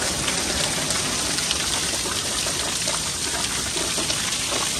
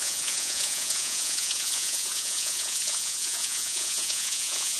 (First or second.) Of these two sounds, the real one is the first